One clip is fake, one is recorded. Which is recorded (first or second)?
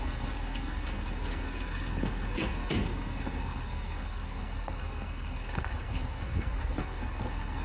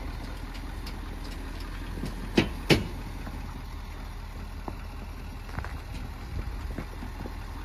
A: second